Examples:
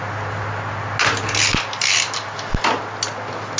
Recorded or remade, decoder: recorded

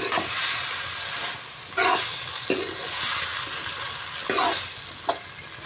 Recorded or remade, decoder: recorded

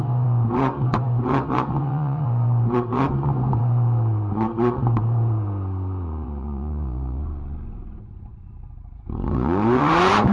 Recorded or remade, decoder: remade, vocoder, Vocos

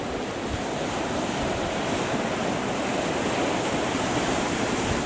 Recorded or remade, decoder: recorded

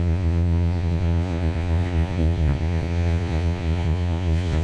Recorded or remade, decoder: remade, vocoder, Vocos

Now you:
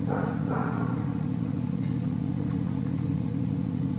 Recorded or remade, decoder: remade, vocoder, Vocos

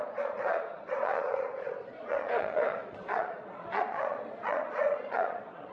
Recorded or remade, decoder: remade, vocoder, Vocos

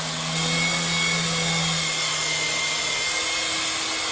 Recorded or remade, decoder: recorded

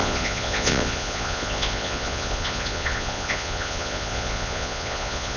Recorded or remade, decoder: remade, vocoder, Vocos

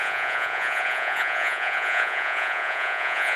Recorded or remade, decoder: remade, vocoder, Vocos